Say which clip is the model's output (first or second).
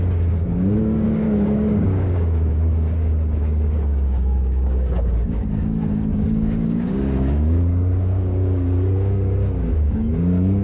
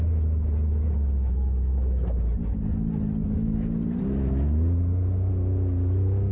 first